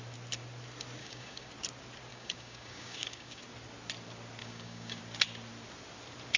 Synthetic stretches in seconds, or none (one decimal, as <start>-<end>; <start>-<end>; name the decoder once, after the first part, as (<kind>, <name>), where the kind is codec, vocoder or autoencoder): 1.0-1.5 (codec, DAC); 2.1-3.4; 4.4-5.0